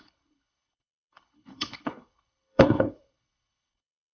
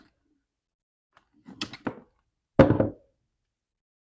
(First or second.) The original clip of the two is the second